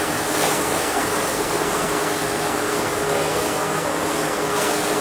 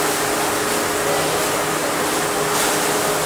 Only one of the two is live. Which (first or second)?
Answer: second